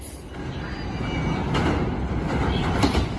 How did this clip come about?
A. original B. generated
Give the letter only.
A